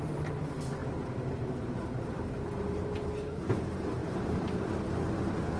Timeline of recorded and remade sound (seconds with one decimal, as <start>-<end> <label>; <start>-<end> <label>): 0.0-0.8 recorded; 0.8-3.4 remade; 3.4-4.0 recorded; 4.0-4.8 remade; 4.8-5.6 recorded